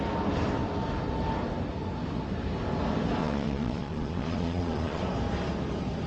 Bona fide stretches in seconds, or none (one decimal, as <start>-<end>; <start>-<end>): 0.0-3.2; 5.0-6.1